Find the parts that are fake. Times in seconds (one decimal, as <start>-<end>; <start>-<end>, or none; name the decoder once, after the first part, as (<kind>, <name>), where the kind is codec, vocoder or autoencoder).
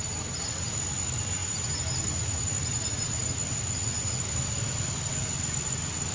none